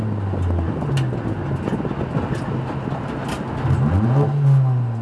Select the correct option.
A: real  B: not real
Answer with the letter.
A